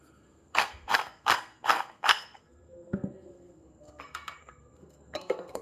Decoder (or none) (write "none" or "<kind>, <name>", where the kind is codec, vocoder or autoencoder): codec, SNAC